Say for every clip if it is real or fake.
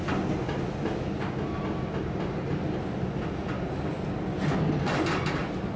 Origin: real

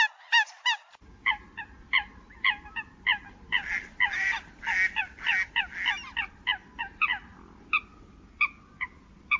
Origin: real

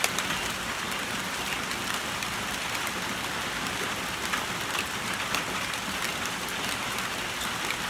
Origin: real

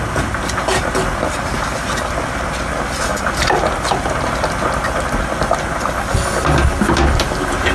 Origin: real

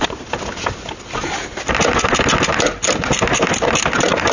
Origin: real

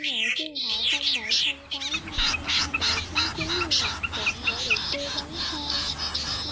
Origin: real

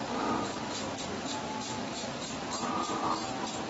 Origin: real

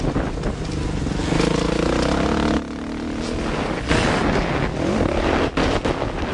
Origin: real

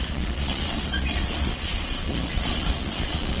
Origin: fake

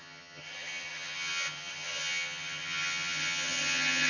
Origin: fake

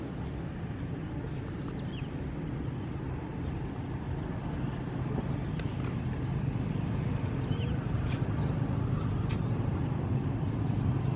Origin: real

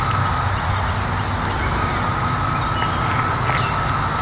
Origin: real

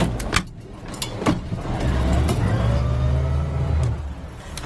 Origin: real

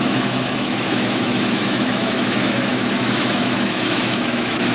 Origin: fake